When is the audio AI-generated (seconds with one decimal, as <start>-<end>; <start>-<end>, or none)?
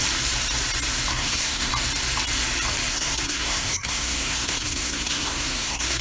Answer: 1.1-1.7; 2.9-6.0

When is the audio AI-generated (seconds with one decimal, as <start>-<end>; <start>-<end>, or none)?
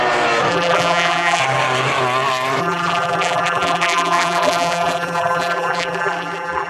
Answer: 0.5-1.4; 2.6-6.7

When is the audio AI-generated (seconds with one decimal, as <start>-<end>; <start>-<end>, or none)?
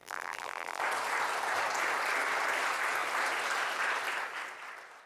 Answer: 0.0-0.8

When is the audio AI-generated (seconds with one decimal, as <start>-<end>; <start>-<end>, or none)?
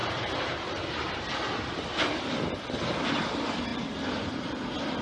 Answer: 0.0-3.0; 3.7-5.0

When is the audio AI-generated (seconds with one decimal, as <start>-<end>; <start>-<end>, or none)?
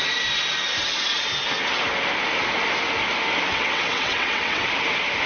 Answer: 3.5-4.6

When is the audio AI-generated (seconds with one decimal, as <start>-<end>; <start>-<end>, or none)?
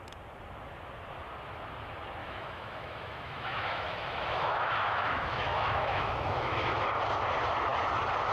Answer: 2.2-6.9